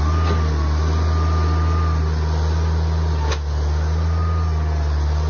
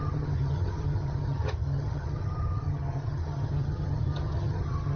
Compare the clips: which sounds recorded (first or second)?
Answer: first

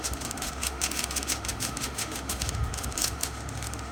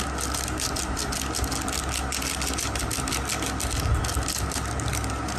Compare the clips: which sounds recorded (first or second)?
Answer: second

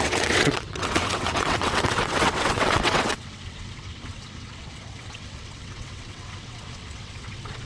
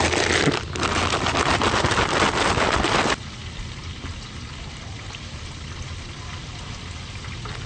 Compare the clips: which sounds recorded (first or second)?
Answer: second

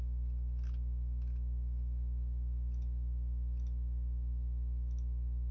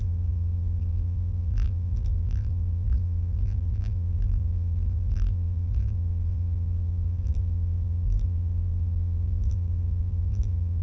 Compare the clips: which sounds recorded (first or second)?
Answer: first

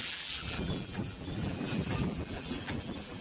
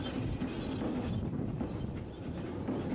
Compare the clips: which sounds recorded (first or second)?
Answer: second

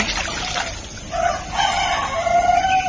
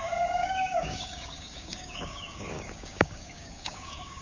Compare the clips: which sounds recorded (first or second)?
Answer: first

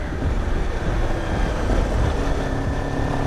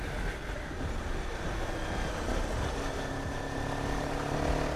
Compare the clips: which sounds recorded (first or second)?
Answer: second